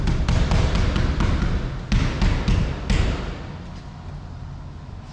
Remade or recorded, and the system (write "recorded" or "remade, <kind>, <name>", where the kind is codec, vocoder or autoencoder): recorded